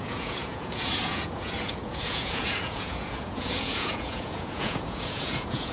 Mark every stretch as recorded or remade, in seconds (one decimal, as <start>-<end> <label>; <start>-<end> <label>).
0.0-5.7 remade

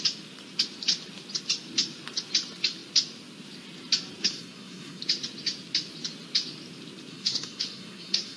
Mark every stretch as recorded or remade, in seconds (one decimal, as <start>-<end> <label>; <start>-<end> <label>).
0.0-4.2 recorded; 4.2-5.0 remade; 5.0-7.1 recorded; 7.1-8.4 remade

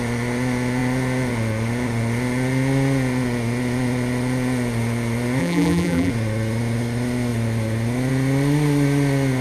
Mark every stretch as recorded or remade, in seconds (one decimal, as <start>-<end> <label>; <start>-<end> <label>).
0.0-5.4 recorded; 5.4-6.1 remade; 6.1-9.4 recorded

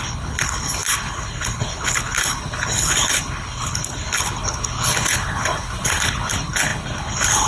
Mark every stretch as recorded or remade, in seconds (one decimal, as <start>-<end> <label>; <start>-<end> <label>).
0.0-7.5 remade

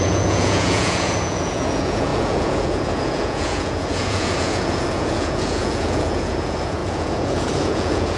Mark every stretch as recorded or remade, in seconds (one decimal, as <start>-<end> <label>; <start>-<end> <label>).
0.0-8.2 remade